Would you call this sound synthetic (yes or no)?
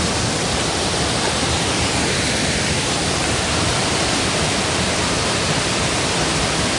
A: yes